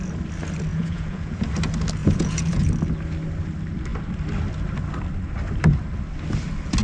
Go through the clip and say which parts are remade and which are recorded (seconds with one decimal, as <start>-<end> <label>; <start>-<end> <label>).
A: 0.0-0.7 recorded; 0.7-1.4 remade; 1.4-2.0 recorded; 2.0-2.7 remade; 2.7-6.8 recorded